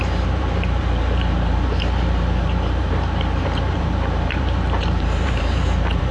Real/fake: fake